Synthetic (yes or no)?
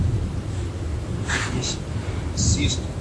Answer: yes